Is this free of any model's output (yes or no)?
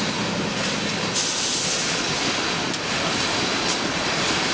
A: yes